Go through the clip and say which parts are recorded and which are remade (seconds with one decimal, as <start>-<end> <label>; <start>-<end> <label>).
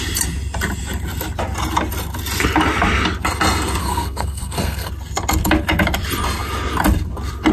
0.0-3.8 recorded; 3.8-4.9 remade; 4.9-7.5 recorded